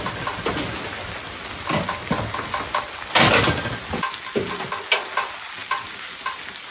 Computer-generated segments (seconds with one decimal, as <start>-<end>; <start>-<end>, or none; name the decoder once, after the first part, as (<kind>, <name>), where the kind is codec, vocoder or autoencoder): none